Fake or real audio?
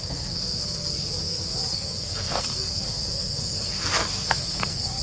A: fake